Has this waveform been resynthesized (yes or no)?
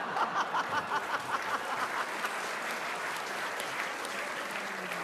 no